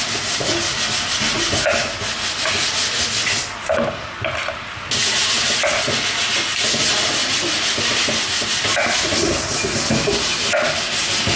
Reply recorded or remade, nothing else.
recorded